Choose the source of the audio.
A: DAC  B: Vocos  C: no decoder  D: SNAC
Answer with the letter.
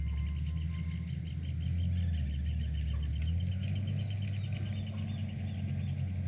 C